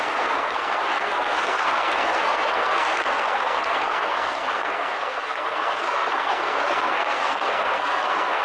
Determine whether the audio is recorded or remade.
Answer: remade